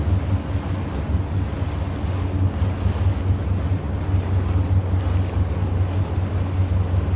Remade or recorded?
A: recorded